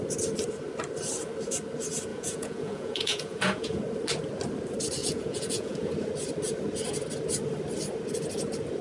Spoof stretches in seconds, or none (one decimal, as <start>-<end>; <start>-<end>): 2.1-3.8; 5.0-5.9